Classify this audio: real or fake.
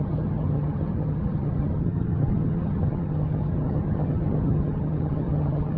fake